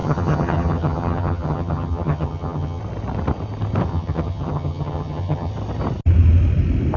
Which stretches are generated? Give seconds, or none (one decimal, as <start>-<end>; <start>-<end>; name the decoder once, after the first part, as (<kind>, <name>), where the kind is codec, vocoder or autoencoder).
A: 0.0-2.8 (vocoder, HiFi-GAN); 3.9-5.5